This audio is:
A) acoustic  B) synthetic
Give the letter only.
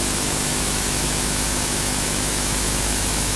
B